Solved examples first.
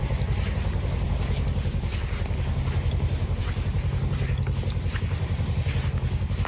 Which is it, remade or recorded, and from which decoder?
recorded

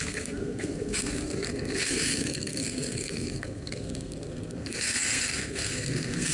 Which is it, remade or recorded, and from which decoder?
remade, codec, SNAC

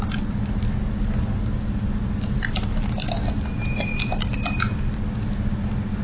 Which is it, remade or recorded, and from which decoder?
recorded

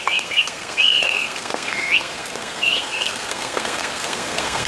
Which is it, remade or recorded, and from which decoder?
remade, codec, SNAC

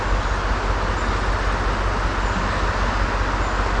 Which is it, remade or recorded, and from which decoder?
recorded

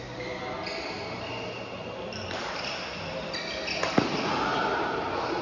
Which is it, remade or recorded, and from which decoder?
recorded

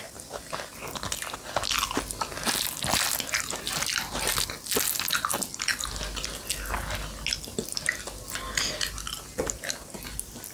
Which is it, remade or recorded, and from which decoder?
recorded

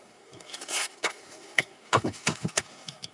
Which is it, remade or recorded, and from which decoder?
remade, codec, SNAC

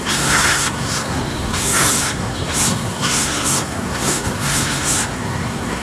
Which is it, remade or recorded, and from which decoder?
remade, codec, SNAC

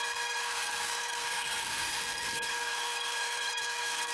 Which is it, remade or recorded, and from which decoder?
remade, codec, SNAC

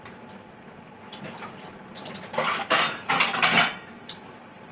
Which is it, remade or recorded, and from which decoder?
recorded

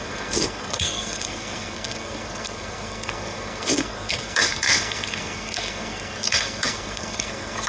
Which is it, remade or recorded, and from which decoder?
remade, codec, SNAC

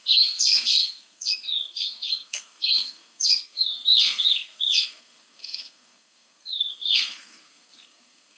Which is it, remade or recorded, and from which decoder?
remade, codec, SNAC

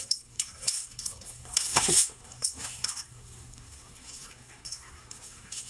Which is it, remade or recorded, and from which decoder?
remade, codec, SNAC